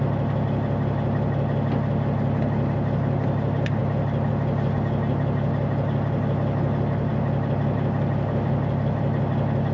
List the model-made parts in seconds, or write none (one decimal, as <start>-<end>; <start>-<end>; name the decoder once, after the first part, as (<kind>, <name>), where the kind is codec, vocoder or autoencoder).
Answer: none